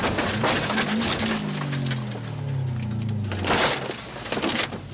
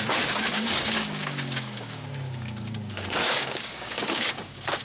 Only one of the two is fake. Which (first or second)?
second